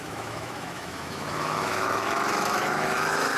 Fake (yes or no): yes